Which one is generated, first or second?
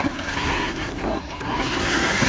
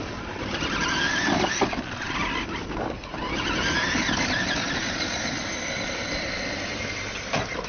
first